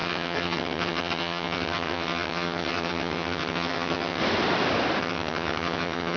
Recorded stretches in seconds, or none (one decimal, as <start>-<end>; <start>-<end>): 4.2-5.0